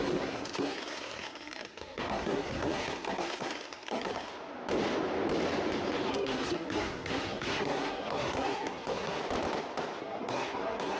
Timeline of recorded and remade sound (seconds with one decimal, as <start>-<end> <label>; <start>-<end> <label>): 0.0-4.3 remade; 4.3-6.1 recorded; 6.1-9.2 remade; 9.2-10.0 recorded; 10.0-11.0 remade